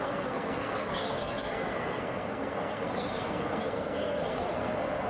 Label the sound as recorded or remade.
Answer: remade